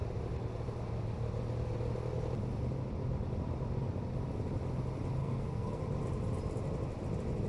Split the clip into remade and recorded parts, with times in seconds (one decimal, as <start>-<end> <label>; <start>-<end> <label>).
0.0-5.2 recorded; 5.2-5.8 remade; 5.8-7.5 recorded